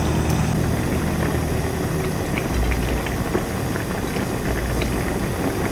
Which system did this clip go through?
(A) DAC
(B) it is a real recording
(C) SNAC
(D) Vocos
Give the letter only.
B